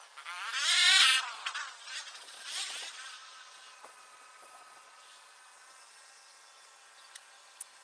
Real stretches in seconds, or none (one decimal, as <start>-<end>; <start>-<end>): 0.0-0.8; 5.0-7.8